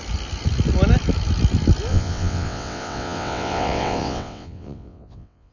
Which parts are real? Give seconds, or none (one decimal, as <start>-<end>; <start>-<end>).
0.0-1.9

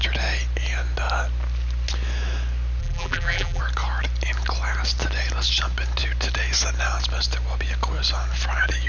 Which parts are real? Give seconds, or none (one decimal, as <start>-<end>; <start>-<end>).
0.0-2.8; 3.6-8.9

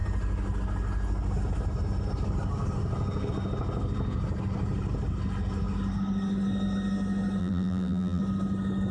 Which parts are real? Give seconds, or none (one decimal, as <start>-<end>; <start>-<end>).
0.0-7.4; 8.2-8.9

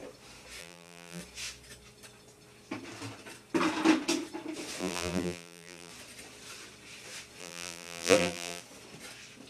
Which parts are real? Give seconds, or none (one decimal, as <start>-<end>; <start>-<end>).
0.0-0.6; 1.2-4.8; 5.9-7.4; 8.6-9.5

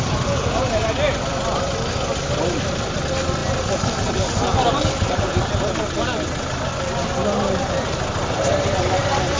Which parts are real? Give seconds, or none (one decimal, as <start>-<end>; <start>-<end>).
0.0-9.4

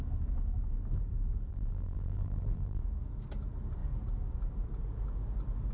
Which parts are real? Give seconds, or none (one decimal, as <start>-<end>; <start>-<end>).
0.0-1.5; 2.8-5.7